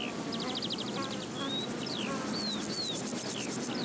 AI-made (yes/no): yes